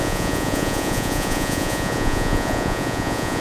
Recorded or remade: remade